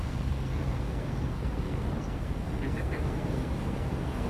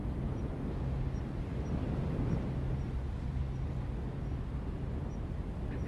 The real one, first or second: second